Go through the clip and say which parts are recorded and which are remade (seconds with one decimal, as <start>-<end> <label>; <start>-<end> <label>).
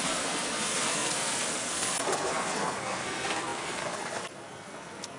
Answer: 0.0-5.2 remade